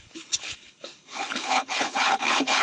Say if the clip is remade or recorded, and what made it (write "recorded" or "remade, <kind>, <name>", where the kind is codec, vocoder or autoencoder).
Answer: remade, codec, HILCodec